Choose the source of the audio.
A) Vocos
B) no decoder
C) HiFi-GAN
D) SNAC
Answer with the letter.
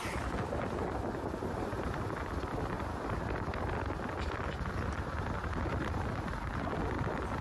B